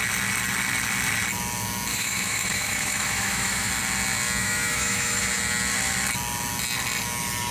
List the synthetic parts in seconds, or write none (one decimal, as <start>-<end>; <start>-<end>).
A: 1.9-3.7; 4.4-5.2